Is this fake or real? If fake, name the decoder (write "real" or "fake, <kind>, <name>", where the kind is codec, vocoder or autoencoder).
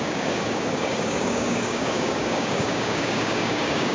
fake, codec, DAC